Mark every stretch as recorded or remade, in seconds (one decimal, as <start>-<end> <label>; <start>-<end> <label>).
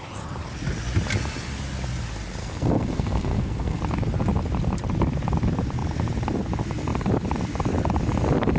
0.0-2.4 recorded; 2.4-3.8 remade; 3.8-8.6 recorded